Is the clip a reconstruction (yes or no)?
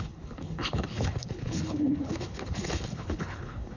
yes